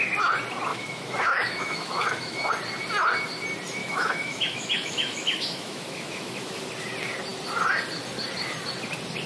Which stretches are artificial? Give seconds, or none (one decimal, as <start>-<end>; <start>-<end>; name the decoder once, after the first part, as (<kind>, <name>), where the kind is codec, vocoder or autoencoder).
0.7-2.5 (autoencoder, DAC-VAE); 3.8-6.6